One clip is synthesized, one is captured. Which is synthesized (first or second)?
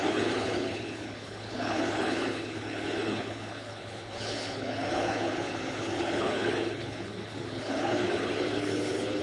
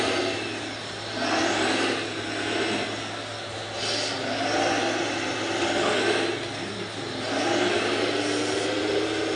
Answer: first